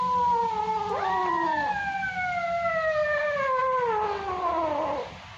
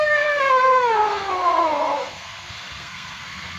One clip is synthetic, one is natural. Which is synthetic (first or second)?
second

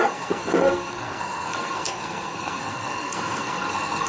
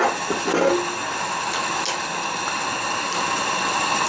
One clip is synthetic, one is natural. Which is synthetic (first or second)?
first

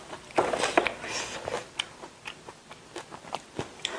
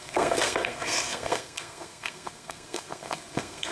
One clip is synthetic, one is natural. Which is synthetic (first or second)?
second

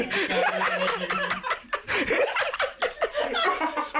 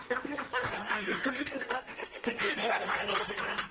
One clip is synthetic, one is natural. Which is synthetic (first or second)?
second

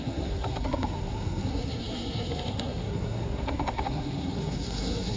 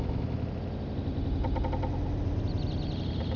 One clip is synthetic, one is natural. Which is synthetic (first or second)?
first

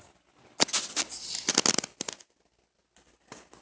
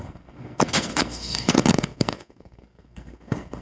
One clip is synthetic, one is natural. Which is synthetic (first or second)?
second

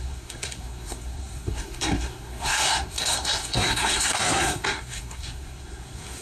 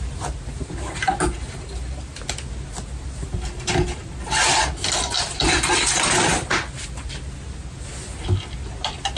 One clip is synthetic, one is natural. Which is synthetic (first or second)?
first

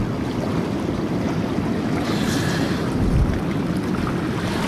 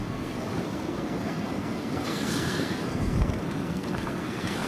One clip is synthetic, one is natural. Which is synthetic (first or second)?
second